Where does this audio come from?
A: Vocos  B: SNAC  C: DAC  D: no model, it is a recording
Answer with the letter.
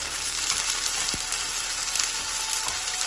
D